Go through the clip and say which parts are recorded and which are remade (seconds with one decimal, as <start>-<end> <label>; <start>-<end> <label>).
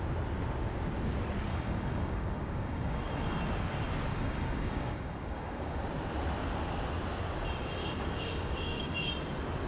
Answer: 0.0-1.5 recorded; 1.5-3.0 remade; 3.0-4.1 recorded; 4.1-5.8 remade; 5.8-7.8 recorded; 7.8-9.1 remade; 9.1-9.7 recorded